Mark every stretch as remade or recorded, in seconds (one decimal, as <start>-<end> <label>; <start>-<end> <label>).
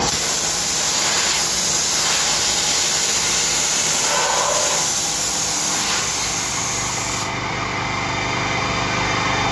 0.0-9.5 recorded